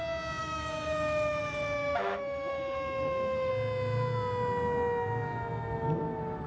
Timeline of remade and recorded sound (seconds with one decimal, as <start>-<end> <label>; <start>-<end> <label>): 0.0-0.4 recorded; 0.4-3.5 remade; 3.5-6.5 recorded